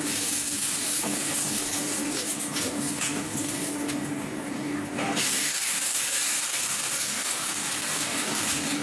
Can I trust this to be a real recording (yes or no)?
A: no